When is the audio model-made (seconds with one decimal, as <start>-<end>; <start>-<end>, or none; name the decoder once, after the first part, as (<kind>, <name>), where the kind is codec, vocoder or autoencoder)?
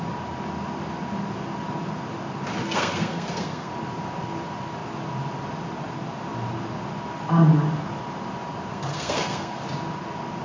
2.6-3.7 (codec, SNAC); 8.7-9.6